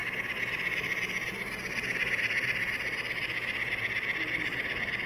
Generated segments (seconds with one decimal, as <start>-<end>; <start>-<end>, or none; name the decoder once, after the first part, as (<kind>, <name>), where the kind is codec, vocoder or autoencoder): 3.1-5.1 (vocoder, BigVGAN v2)